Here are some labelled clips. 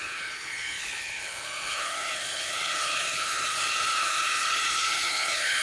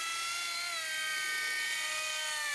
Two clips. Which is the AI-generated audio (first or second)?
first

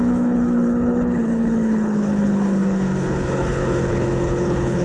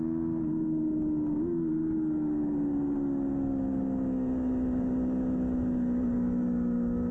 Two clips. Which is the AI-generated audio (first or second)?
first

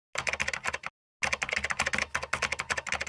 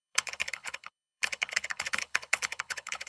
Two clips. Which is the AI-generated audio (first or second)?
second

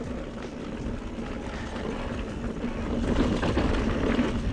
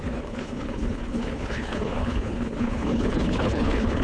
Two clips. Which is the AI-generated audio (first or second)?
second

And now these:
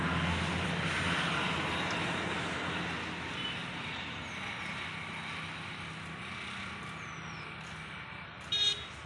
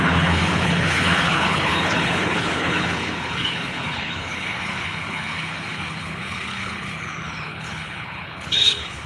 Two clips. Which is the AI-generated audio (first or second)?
second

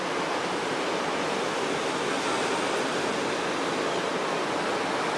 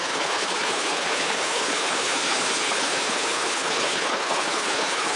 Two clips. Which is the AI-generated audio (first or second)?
second